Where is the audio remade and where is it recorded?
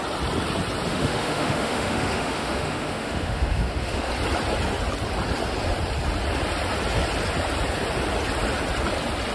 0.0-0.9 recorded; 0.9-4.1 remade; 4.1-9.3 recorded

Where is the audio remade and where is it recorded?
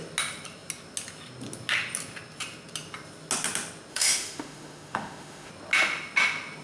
0.0-3.9 recorded; 3.9-5.5 remade; 5.5-6.6 recorded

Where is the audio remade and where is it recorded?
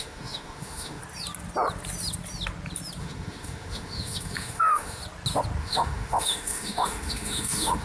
0.0-1.0 remade; 1.0-3.0 recorded; 3.0-5.0 remade; 5.0-5.6 recorded; 5.6-7.8 remade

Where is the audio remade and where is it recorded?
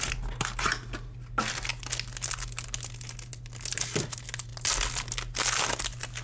0.0-6.2 recorded